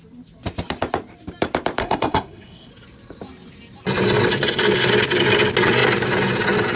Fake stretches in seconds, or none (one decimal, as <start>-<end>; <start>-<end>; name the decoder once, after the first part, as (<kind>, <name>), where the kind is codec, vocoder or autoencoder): 1.8-2.7 (codec, SNAC)